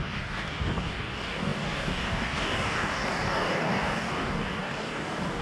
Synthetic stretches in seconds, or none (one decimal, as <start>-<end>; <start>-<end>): 0.0-5.4